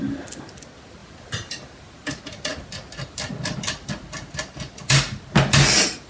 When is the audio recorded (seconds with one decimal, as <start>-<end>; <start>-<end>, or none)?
0.0-6.1

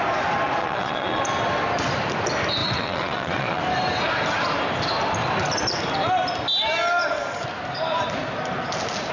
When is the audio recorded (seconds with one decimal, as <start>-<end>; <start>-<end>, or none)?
0.0-0.6; 1.2-2.6; 3.6-9.1

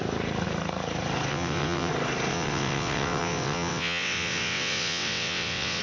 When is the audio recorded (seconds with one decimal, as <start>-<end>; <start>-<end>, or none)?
0.0-1.3; 1.9-2.3

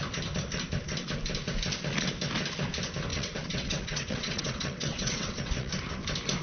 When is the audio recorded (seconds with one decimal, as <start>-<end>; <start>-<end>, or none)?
0.0-3.1; 5.7-6.4

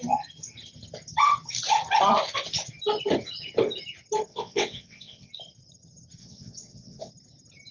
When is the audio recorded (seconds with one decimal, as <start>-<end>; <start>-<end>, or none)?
0.0-4.3; 5.3-6.2; 7.1-7.7

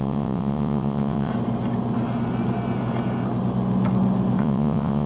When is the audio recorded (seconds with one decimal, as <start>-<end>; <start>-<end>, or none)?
1.3-4.4